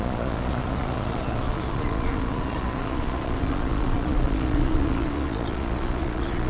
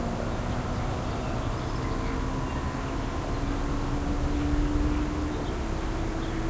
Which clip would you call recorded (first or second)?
second